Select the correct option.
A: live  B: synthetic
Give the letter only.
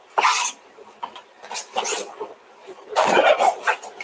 B